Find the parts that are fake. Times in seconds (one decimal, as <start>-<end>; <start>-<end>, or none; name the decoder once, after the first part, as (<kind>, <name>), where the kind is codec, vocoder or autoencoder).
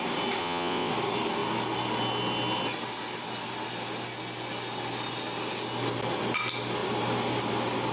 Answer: 0.4-0.9 (vocoder, WaveNeXt)